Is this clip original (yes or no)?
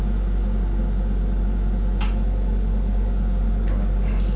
yes